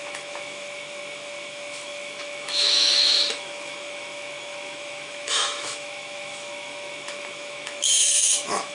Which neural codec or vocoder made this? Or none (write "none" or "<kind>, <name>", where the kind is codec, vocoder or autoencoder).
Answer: autoencoder, DAC-VAE